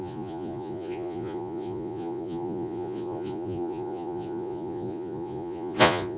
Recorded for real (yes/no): no